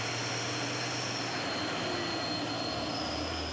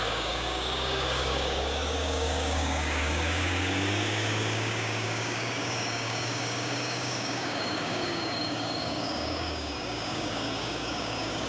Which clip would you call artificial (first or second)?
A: second